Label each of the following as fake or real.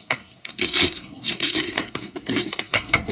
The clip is fake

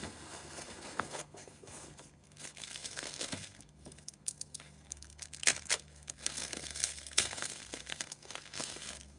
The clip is fake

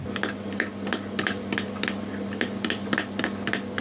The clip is real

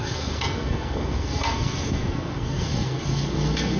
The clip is fake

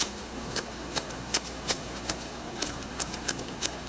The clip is fake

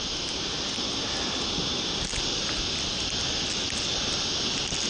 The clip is real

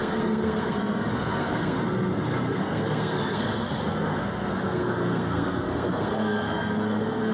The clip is fake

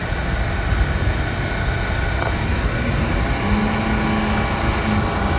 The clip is real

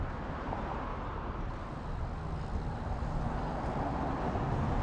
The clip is real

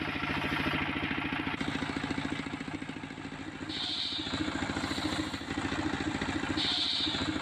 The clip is real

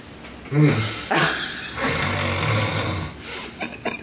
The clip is real